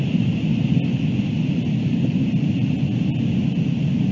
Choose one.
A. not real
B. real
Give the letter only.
B